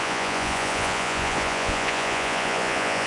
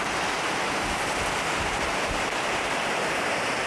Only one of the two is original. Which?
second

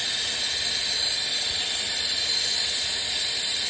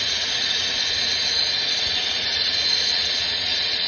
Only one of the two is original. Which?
first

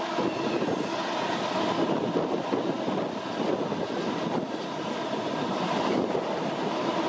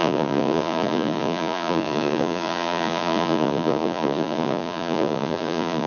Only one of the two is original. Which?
first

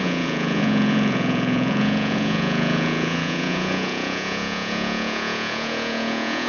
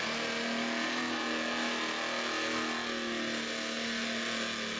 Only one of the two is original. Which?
second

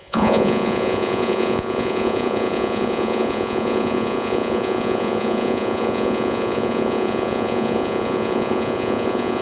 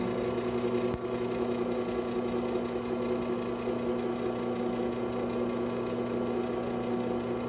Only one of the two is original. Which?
second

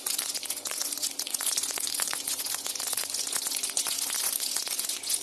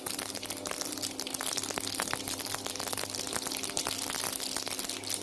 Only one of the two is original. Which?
second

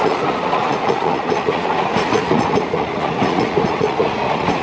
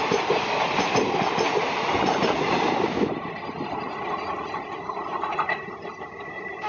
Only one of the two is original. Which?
second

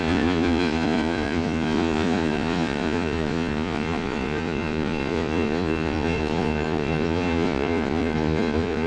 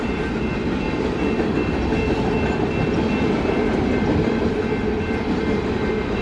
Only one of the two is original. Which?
second